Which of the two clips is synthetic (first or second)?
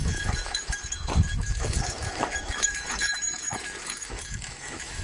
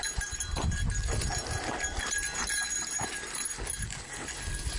first